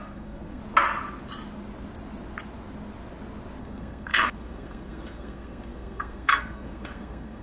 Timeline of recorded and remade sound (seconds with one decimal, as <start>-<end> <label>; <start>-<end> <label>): 0.0-0.6 remade; 0.6-3.6 recorded; 3.6-7.4 remade